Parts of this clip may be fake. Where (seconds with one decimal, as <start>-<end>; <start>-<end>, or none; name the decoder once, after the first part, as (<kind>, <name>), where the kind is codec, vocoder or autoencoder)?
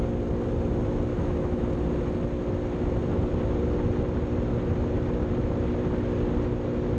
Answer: 1.1-1.7 (autoencoder, DAC-VAE)